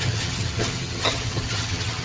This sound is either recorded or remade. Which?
remade